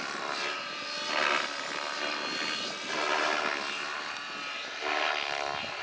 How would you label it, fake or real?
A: real